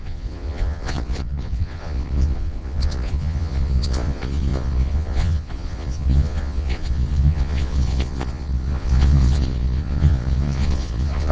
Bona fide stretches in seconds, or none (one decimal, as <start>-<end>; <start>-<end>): none